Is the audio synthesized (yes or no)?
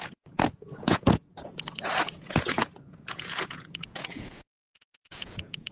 yes